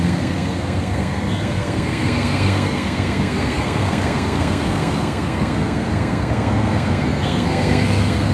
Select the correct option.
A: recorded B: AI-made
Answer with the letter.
B